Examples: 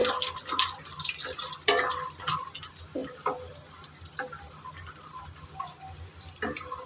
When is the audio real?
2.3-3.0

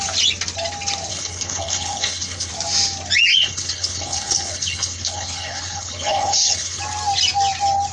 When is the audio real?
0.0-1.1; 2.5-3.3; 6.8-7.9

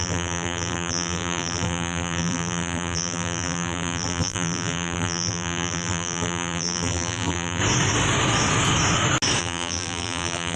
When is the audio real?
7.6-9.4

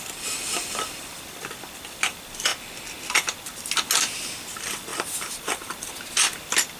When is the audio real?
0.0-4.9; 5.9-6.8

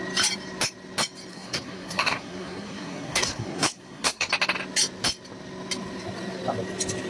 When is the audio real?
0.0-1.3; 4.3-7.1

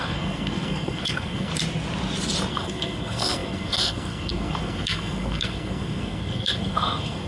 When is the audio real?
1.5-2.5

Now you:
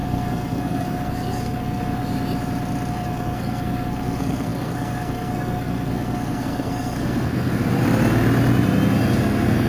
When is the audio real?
2.0-2.9; 7.6-9.2